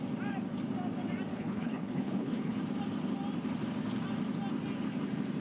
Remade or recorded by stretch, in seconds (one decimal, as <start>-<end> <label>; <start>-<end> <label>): 0.0-1.3 recorded; 1.3-2.6 remade; 2.6-5.4 recorded